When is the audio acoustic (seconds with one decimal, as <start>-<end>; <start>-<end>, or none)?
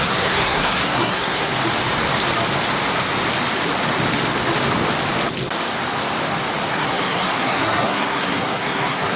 1.5-6.7